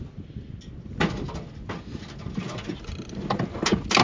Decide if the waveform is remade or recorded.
recorded